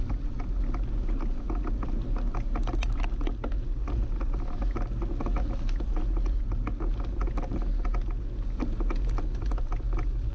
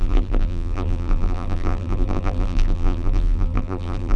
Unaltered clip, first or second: first